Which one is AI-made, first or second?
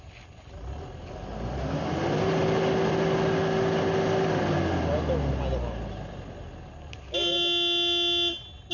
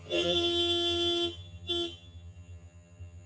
second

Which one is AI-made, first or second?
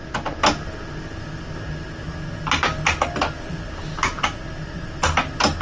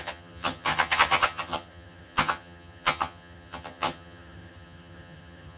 second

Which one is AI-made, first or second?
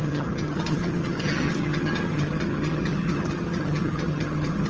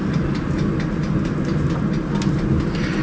first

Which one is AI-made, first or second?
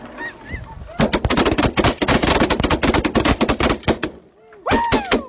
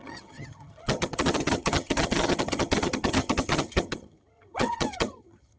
second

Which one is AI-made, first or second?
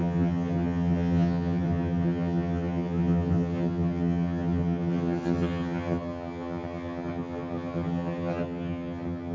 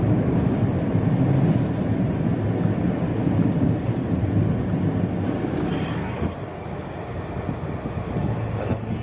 first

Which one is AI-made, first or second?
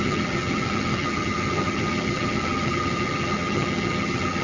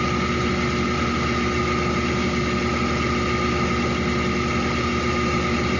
first